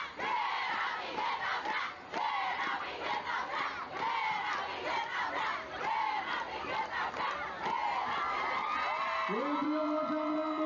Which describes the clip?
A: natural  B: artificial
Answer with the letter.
A